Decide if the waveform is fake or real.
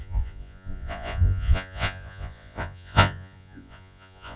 fake